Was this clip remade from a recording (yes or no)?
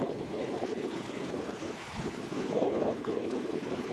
yes